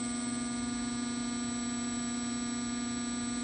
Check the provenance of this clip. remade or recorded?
recorded